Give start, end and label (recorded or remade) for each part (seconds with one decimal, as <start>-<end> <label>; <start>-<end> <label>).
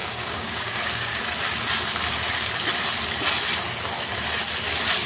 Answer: 0.0-1.2 remade; 1.2-5.1 recorded